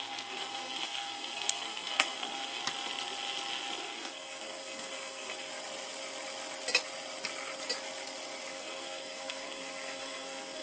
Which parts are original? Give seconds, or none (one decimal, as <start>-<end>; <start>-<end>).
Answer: 2.6-3.8; 5.5-8.5